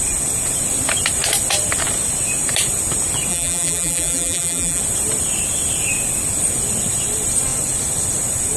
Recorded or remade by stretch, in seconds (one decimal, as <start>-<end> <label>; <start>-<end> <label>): 0.0-3.3 recorded; 3.3-4.8 remade; 4.8-8.6 recorded